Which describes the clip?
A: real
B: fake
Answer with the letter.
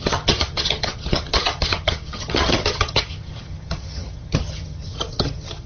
B